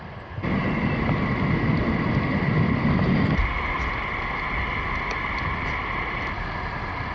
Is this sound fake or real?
real